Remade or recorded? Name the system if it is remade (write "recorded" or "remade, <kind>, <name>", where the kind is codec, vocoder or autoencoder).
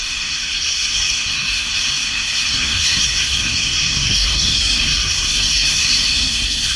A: remade, codec, SNAC